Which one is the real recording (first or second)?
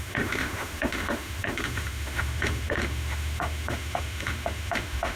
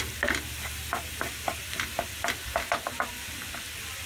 second